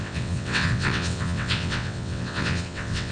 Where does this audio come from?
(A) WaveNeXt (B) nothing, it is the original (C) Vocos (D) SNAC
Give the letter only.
A